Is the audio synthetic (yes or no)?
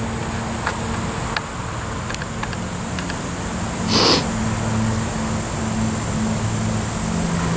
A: no